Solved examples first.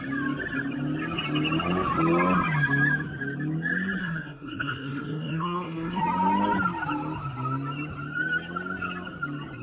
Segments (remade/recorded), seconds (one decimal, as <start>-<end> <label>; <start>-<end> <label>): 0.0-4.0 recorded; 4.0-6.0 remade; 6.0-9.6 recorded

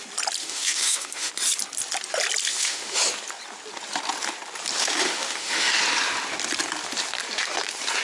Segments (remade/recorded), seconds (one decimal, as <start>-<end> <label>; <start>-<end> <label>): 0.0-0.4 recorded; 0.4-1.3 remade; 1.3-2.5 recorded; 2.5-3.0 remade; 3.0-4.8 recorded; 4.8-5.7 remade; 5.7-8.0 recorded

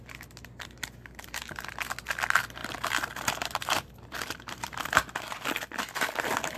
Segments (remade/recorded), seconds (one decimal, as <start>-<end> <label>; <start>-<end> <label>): 0.0-2.6 recorded; 2.6-6.6 remade

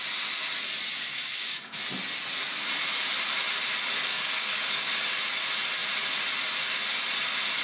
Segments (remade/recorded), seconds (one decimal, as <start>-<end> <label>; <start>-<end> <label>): 0.0-0.9 recorded; 0.9-1.8 remade; 1.8-4.1 recorded; 4.1-4.9 remade; 4.9-7.6 recorded